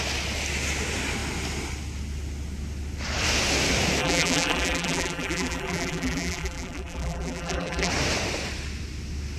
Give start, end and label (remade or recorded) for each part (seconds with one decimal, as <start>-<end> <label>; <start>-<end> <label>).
0.0-4.0 recorded; 4.0-7.9 remade; 7.9-9.4 recorded